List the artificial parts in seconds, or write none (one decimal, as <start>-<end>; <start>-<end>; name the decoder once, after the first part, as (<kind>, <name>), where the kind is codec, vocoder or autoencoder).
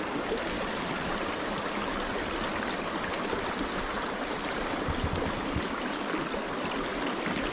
none